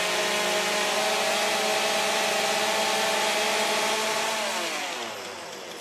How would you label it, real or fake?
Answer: real